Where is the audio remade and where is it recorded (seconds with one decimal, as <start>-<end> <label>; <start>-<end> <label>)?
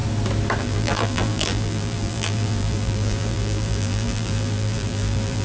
0.0-0.6 recorded; 0.6-5.4 remade